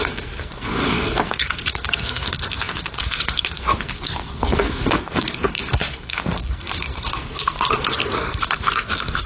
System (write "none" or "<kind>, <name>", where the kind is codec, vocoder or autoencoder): codec, SNAC